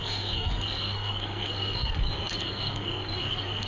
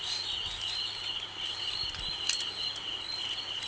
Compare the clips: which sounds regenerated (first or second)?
first